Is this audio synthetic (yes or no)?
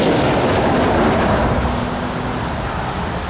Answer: no